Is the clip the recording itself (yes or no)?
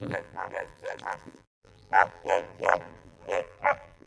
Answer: no